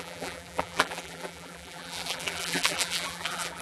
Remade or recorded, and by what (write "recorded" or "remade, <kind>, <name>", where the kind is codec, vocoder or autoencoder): remade, vocoder, BigVGAN v2